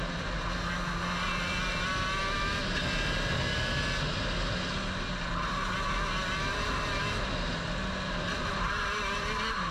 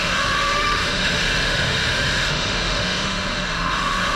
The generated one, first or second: second